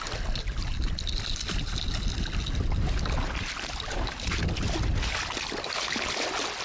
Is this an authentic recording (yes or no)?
yes